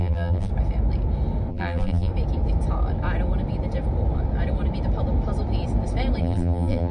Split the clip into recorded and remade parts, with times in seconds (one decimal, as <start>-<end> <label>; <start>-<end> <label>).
0.0-0.5 remade; 0.5-1.5 recorded; 1.5-2.1 remade; 2.1-6.2 recorded; 6.2-6.9 remade